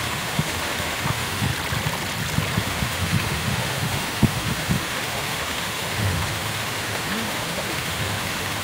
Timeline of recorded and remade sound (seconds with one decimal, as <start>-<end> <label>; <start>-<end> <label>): 0.0-1.5 remade; 1.5-2.6 recorded; 2.6-8.6 remade